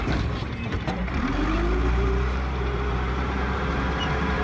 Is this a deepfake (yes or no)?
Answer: yes